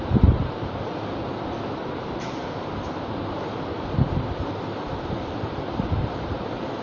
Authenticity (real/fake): fake